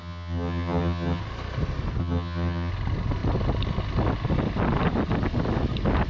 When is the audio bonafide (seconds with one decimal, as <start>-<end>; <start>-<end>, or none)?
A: 1.2-2.0; 2.7-6.1